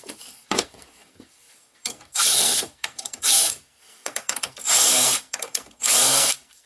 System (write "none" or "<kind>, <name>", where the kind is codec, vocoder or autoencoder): codec, SNAC